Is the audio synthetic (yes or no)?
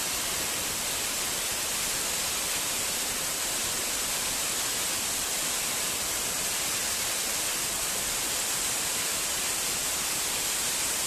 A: no